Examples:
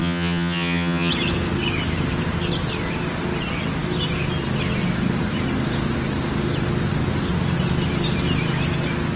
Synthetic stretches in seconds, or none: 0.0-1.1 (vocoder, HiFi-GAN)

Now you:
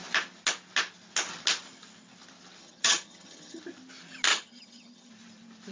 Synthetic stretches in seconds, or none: 2.6-3.6 (vocoder, HiFi-GAN); 4.3-5.1

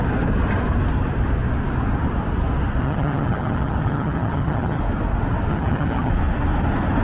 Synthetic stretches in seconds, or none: 2.8-4.8 (vocoder, HiFi-GAN); 5.5-6.1

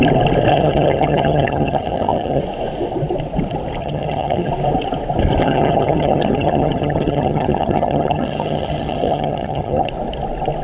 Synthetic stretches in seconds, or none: 0.5-2.4 (vocoder, HiFi-GAN); 3.8-4.5; 5.4-9.9

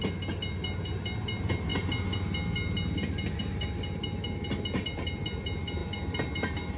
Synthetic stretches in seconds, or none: none

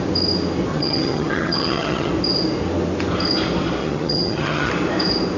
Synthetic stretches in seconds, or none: 0.7-2.1 (vocoder, HiFi-GAN); 3.8-4.7

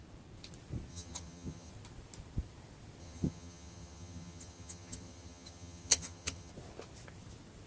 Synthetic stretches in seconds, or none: 0.9-1.7 (vocoder, HiFi-GAN); 3.0-6.5

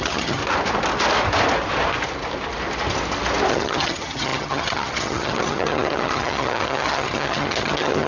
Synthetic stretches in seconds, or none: 0.0-0.4 (vocoder, HiFi-GAN); 3.5-8.1